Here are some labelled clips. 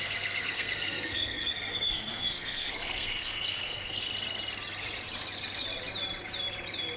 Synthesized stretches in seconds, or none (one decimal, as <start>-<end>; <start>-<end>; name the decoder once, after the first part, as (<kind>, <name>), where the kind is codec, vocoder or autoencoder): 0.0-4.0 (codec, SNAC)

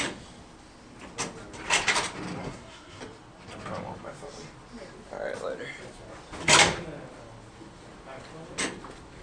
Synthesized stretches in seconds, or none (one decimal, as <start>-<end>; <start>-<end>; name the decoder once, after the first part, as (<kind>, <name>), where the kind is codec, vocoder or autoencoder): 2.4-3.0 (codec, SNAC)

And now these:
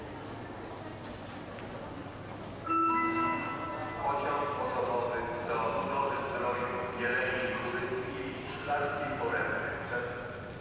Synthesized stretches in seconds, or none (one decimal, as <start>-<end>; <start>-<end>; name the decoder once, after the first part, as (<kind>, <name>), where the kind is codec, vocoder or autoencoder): none